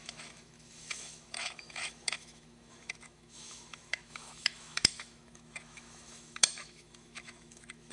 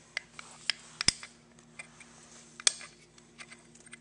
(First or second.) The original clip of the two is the second